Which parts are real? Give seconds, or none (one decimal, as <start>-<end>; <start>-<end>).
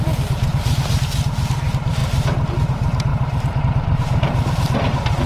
2.0-2.5